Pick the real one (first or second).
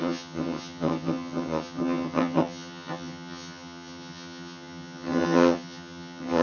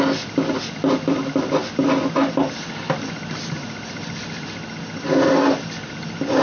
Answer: second